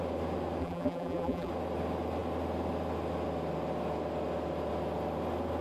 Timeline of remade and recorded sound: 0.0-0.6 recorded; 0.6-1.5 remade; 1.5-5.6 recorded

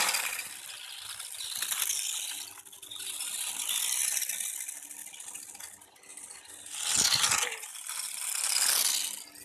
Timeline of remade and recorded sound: 0.0-9.4 recorded

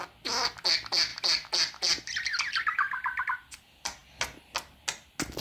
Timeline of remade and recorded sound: 0.0-5.4 recorded

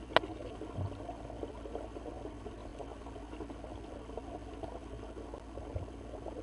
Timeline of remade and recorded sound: 0.0-6.4 recorded

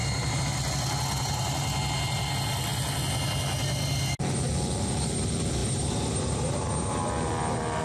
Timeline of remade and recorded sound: 0.0-5.6 recorded; 5.6-7.0 remade; 7.0-7.8 recorded

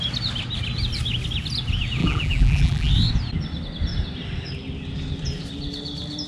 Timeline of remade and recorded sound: 0.0-2.0 recorded; 2.0-2.9 remade; 2.9-6.3 recorded